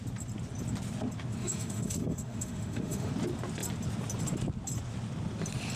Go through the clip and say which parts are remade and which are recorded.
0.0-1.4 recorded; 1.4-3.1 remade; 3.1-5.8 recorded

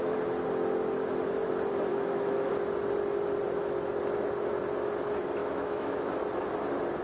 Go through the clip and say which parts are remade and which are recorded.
0.0-1.9 recorded; 1.9-2.5 remade; 2.5-5.4 recorded; 5.4-6.1 remade; 6.1-7.0 recorded

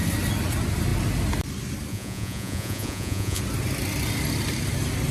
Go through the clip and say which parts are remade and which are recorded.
0.0-1.9 recorded; 1.9-3.4 remade; 3.4-5.1 recorded

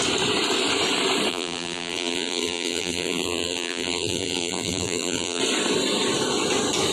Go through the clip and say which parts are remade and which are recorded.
0.0-1.3 recorded; 1.3-5.4 remade; 5.4-6.9 recorded

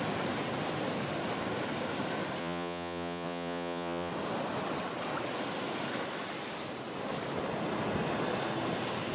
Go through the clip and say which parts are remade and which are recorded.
0.0-2.4 recorded; 2.4-4.1 remade; 4.1-9.1 recorded

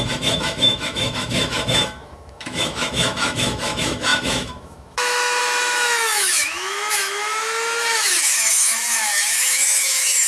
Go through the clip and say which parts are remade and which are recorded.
0.0-10.3 remade